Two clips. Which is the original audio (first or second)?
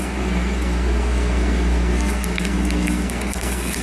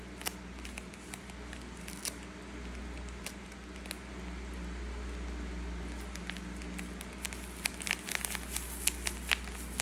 second